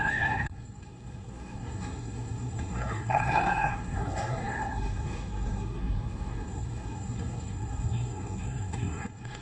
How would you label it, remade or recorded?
remade